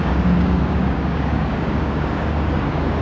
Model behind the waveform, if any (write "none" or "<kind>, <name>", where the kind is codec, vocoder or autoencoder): codec, DAC